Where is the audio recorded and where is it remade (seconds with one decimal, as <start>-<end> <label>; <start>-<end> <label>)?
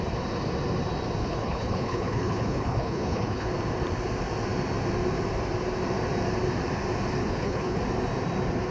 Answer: 0.0-1.2 recorded; 1.2-3.5 remade; 3.5-7.2 recorded; 7.2-7.8 remade; 7.8-8.7 recorded